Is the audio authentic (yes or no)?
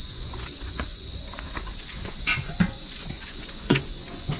no